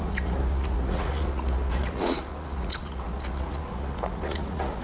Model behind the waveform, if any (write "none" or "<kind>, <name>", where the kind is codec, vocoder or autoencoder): vocoder, Vocos